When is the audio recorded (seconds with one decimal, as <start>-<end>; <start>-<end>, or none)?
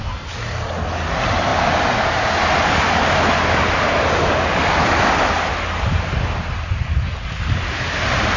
0.0-1.5; 2.5-8.4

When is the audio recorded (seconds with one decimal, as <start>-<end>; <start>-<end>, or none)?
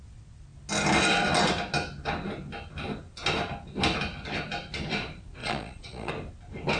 0.0-5.4; 6.1-6.8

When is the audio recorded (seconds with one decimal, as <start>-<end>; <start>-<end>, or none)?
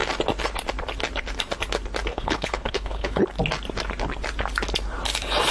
0.0-2.1; 3.2-5.5